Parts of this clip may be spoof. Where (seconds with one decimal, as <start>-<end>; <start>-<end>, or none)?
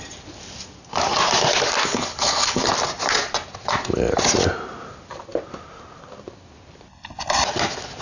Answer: 1.9-2.7